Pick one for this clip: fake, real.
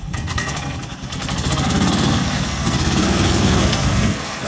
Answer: fake